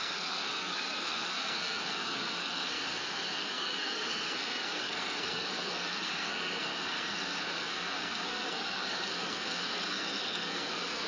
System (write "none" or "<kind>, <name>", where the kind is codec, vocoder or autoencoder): codec, SNAC